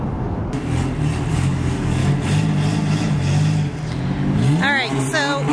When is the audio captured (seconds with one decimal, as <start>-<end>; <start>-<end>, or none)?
0.4-1.3; 2.0-5.5